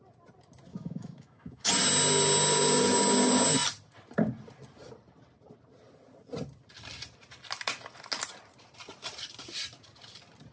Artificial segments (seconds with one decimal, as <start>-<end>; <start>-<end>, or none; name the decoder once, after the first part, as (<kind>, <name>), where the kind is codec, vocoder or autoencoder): 0.7-1.7 (autoencoder, DAC-VAE)